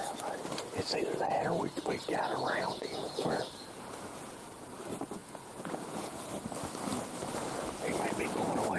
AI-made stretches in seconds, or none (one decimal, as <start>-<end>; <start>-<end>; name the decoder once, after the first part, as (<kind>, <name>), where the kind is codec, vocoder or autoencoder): 2.3-4.8 (vocoder, Vocos); 5.2-6.2